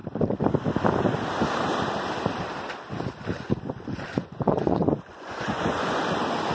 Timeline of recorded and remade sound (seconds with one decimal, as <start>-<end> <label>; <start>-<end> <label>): 0.0-4.1 recorded; 4.1-6.0 remade; 6.0-6.5 recorded